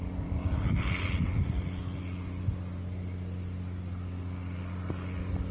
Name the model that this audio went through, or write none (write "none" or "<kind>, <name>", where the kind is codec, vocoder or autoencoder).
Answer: none